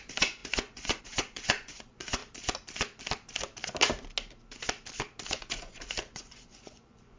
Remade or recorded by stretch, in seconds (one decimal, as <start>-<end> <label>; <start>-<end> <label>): 0.0-2.2 remade; 2.2-5.3 recorded; 5.3-7.2 remade